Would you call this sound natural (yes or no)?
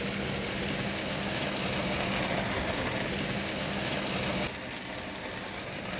yes